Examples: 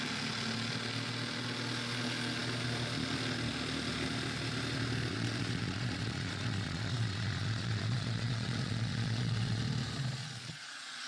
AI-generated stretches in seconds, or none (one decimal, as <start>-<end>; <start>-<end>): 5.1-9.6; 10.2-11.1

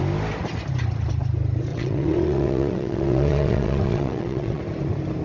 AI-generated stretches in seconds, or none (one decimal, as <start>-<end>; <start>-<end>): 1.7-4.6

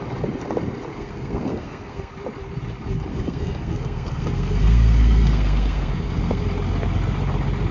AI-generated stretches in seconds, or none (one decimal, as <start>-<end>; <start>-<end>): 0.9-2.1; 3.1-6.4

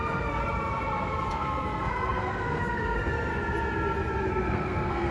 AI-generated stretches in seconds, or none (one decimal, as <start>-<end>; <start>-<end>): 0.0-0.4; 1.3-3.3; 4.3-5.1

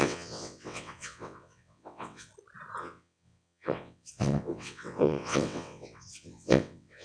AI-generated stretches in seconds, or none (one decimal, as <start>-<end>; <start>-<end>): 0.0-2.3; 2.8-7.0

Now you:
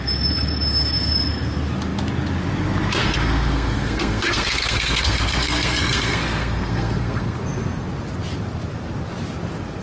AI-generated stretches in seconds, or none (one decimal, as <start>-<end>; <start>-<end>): 3.0-7.4

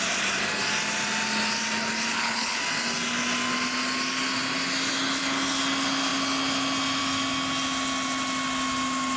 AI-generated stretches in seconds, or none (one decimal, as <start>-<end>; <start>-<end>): 2.1-2.6